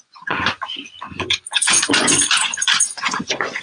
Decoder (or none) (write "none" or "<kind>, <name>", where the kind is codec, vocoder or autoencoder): vocoder, Vocos